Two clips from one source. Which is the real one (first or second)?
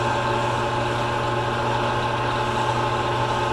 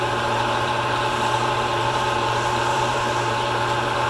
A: first